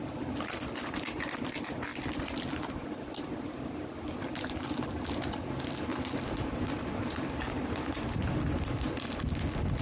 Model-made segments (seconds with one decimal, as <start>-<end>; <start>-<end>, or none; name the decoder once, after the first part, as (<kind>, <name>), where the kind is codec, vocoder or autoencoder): 1.9-4.0 (vocoder, BigVGAN v2); 5.9-9.3